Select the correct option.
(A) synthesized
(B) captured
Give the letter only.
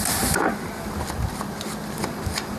B